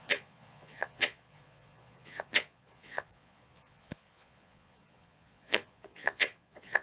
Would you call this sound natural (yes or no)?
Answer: no